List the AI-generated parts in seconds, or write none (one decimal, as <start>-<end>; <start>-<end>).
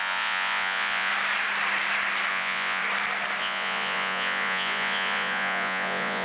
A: 0.0-1.1; 2.3-2.8; 3.4-6.2